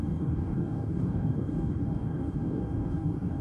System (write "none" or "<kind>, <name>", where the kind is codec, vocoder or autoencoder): codec, DAC